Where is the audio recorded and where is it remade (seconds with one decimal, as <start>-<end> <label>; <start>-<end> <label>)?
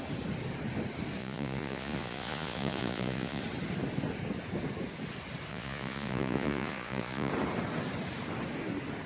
0.0-1.2 recorded; 1.2-3.4 remade; 3.4-5.5 recorded; 5.5-7.3 remade; 7.3-9.1 recorded